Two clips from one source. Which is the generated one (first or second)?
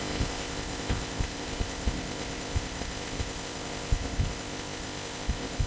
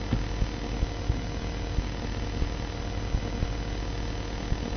first